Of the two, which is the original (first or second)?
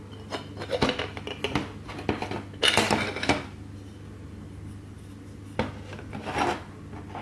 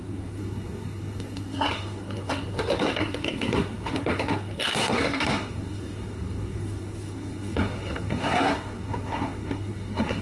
first